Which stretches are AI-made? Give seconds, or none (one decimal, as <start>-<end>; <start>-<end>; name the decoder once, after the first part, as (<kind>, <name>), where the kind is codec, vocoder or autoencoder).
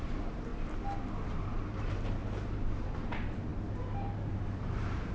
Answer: 0.0-0.5 (vocoder, BigVGAN v2); 1.2-2.2; 2.8-5.1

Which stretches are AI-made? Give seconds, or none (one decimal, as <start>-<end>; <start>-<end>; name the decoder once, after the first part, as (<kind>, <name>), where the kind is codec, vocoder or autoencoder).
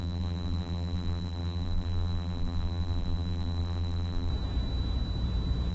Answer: 0.0-4.3 (vocoder, BigVGAN v2)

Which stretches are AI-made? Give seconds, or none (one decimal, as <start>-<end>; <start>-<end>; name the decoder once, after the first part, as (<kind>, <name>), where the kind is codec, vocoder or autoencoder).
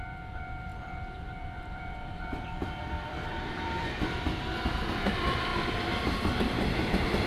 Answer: 0.0-5.5 (vocoder, BigVGAN v2); 6.1-7.3